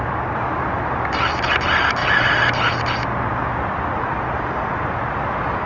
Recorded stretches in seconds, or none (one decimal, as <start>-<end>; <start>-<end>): 0.0-5.7